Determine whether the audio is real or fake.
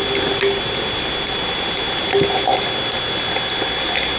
real